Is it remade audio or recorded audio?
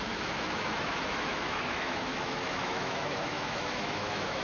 remade